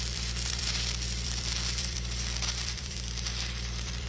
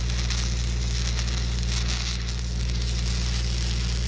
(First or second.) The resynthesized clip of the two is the first